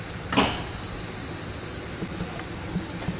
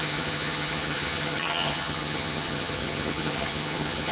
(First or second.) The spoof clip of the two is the second